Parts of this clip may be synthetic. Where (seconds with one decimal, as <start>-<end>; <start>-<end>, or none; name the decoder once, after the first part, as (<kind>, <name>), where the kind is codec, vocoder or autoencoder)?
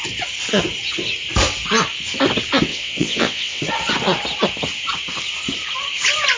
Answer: 2.7-3.6 (vocoder, WaveNeXt)